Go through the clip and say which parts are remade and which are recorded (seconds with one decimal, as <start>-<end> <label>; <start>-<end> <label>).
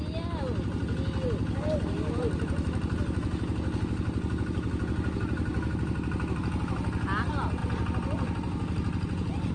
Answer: 0.0-9.5 recorded